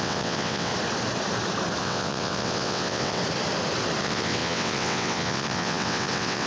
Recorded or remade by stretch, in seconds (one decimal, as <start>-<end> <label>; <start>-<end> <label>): 0.0-0.7 remade; 0.7-1.8 recorded; 1.8-3.2 remade; 3.2-4.0 recorded; 4.0-6.5 remade